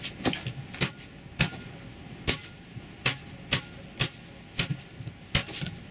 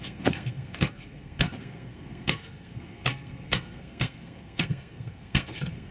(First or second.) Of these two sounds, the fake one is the second